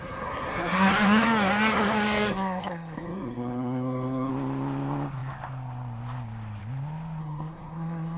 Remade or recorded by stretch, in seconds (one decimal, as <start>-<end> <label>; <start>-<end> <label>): 0.0-4.3 remade; 4.3-7.2 recorded; 7.2-8.2 remade

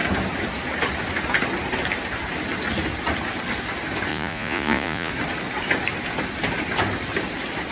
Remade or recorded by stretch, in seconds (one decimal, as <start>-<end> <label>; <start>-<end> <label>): 0.0-4.1 recorded; 4.1-5.1 remade; 5.1-7.7 recorded

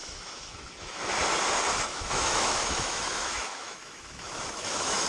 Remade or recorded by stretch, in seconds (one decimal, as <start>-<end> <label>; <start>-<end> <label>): 0.0-1.0 remade; 1.0-1.9 recorded; 1.9-5.1 remade

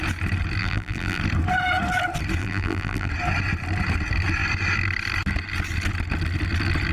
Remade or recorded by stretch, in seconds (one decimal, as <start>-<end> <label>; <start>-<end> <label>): 0.0-0.6 recorded; 0.6-1.2 remade; 1.2-2.4 recorded; 2.4-3.1 remade; 3.1-6.9 recorded

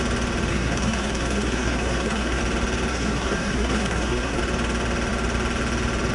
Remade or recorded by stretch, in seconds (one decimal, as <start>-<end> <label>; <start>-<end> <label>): 0.0-0.5 recorded; 0.5-2.4 remade; 2.4-2.9 recorded; 2.9-4.4 remade; 4.4-6.1 recorded

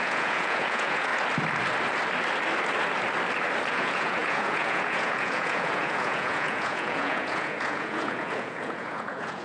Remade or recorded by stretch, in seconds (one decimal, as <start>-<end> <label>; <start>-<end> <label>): 0.0-1.1 remade; 1.1-3.7 recorded; 3.7-9.4 remade

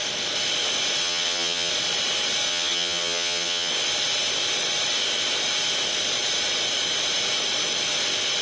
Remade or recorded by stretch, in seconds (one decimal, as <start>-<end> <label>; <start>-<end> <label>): 0.0-1.0 recorded; 1.0-1.7 remade; 1.7-2.5 recorded; 2.5-3.7 remade; 3.7-8.4 recorded